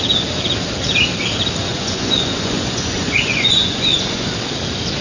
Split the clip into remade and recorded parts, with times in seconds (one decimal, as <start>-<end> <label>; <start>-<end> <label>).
0.0-1.7 recorded; 1.7-4.3 remade; 4.3-5.0 recorded